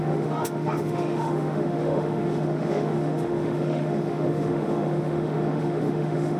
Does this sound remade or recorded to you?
remade